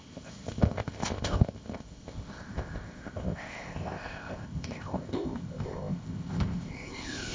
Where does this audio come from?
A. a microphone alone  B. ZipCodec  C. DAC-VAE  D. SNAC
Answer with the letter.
B